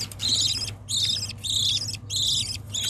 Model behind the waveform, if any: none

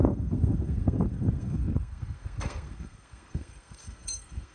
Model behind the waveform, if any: codec, SNAC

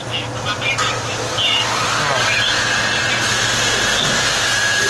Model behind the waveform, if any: none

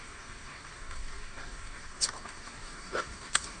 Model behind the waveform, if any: codec, DAC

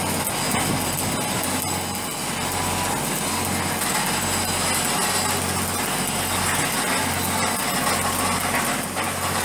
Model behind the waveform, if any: none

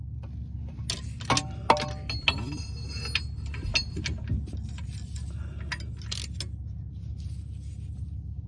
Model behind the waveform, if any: none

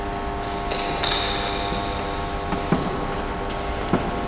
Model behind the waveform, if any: none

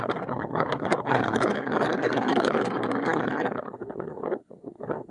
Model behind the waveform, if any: codec, SNAC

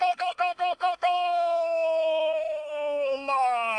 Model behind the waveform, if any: codec, SNAC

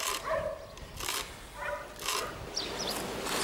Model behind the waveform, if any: none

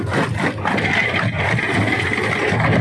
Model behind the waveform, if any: none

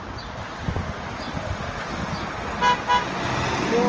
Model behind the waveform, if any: none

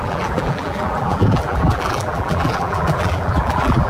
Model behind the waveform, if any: vocoder, BigVGAN v2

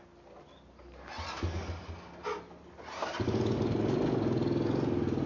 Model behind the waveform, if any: none